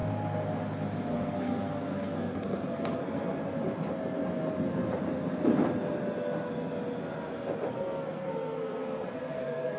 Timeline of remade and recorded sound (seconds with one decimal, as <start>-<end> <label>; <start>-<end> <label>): 0.0-1.1 recorded; 1.1-3.4 remade; 3.4-7.7 recorded; 7.7-9.8 remade